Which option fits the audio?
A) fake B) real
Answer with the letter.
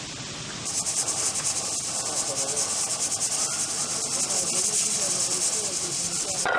B